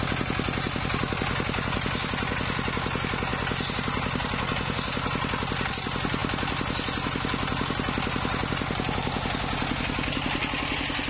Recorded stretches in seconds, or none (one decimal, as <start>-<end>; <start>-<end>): 0.0-11.1